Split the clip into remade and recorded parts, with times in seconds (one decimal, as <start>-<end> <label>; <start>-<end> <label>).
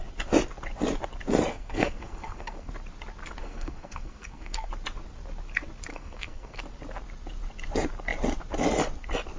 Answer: 0.0-1.5 recorded; 1.5-2.7 remade; 2.7-3.4 recorded; 3.4-4.7 remade; 4.7-5.9 recorded; 5.9-6.6 remade; 6.6-9.4 recorded